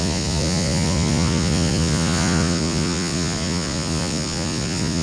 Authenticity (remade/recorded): remade